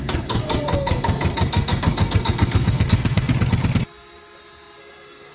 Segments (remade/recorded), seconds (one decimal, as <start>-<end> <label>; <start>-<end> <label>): 0.0-3.3 remade; 3.3-4.8 recorded; 4.8-5.3 remade